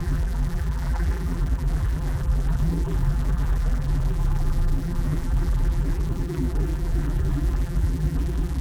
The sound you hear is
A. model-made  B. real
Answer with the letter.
A